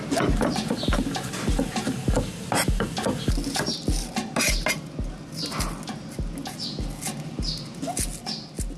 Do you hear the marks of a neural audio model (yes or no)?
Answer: no